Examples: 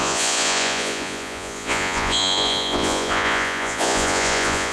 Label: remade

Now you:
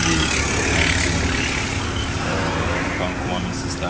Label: recorded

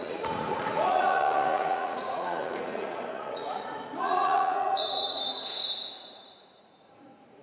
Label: remade